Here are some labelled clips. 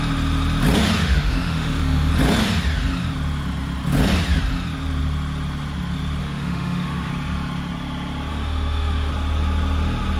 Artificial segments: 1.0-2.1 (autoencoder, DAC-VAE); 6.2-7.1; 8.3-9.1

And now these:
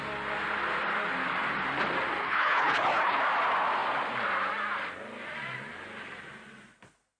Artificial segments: 2.2-3.2 (codec, HILCodec)